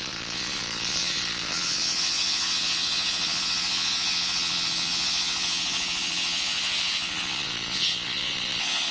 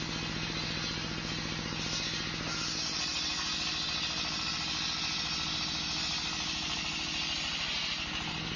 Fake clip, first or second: first